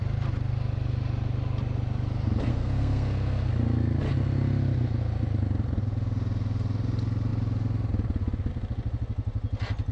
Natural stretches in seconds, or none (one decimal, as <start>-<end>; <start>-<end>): 0.0-2.5; 3.5-9.9